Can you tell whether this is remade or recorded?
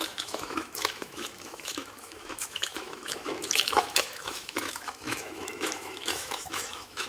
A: remade